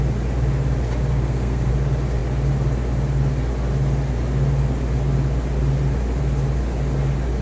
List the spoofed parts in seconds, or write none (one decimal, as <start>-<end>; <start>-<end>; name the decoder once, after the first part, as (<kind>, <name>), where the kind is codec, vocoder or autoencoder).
1.1-1.7 (codec, SNAC)